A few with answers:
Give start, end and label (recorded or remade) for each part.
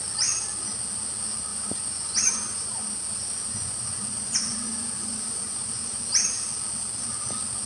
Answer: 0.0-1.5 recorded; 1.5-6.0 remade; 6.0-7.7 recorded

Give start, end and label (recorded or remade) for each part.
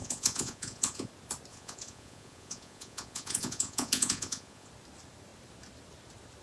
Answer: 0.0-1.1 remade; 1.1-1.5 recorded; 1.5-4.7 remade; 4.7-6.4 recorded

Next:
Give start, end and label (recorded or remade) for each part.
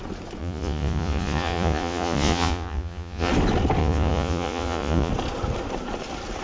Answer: 0.0-0.4 recorded; 0.4-3.3 remade; 3.3-3.8 recorded; 3.8-5.1 remade; 5.1-6.4 recorded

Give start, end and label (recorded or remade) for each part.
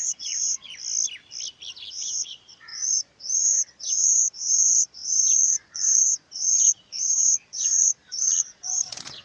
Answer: 0.0-0.7 remade; 0.7-1.9 recorded; 1.9-9.2 remade